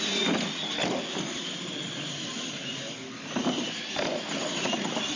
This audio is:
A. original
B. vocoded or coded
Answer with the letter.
A